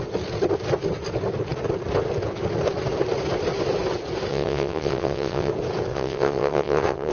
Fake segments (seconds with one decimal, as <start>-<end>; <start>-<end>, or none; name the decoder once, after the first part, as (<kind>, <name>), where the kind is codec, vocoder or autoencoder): 4.3-5.5 (vocoder, WaveNeXt); 5.9-7.1